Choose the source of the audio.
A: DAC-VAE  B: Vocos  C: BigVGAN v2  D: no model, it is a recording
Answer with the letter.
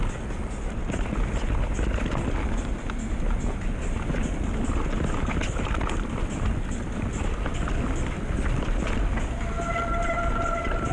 D